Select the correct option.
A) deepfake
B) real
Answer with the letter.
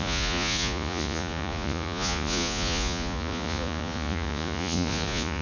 A